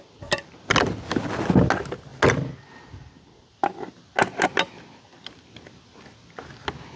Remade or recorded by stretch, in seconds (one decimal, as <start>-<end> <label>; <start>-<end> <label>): 0.0-7.0 recorded

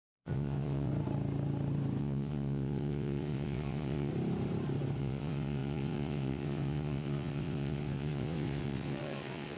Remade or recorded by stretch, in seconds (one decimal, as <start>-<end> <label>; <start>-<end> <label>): 0.0-0.9 remade; 0.9-2.0 recorded; 2.0-4.1 remade; 4.1-5.0 recorded; 5.0-9.6 remade